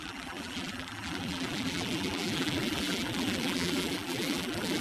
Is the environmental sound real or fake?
fake